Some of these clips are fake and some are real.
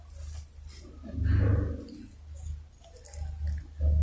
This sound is real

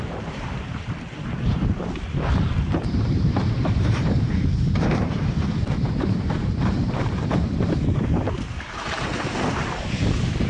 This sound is fake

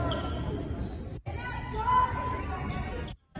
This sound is real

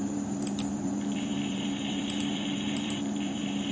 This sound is fake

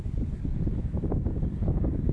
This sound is fake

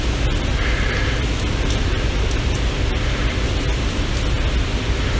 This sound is real